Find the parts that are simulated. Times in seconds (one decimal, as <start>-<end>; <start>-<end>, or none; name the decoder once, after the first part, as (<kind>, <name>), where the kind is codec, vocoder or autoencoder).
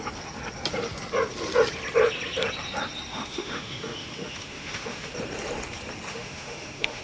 3.1-5.1 (autoencoder, DAC-VAE); 6.1-7.0